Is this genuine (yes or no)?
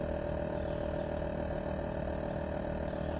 yes